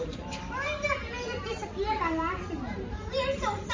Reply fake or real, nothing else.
fake